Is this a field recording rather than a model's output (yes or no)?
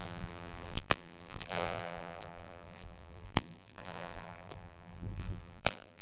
no